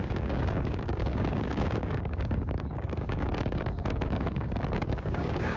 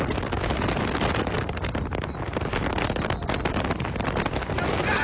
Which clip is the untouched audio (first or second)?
second